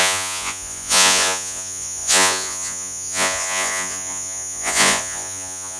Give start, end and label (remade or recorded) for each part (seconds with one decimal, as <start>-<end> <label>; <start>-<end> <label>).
0.0-5.8 remade